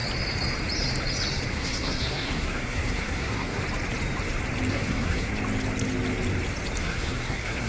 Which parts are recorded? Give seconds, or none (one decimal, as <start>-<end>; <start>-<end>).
0.0-1.5; 3.6-4.7; 5.3-6.8